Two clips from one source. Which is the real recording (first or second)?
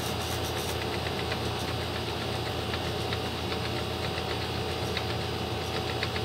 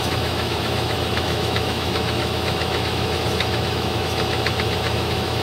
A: first